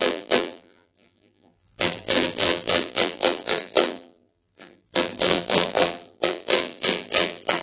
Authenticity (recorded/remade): remade